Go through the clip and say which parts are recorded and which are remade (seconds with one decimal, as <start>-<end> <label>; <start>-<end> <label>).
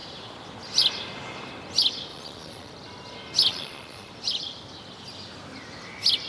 0.0-2.1 recorded; 2.1-2.7 remade; 2.7-3.5 recorded; 3.5-4.1 remade; 4.1-6.3 recorded